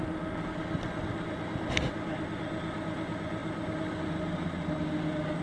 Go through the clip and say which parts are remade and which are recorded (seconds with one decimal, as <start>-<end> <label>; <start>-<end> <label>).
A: 0.0-5.4 recorded